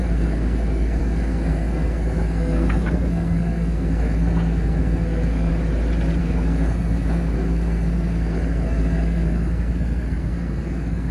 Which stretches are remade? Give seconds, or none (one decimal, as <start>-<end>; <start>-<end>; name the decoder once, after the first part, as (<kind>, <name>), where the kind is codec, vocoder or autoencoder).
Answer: 0.0-5.5 (codec, SNAC); 6.2-11.1